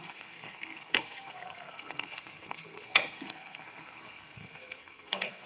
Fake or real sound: fake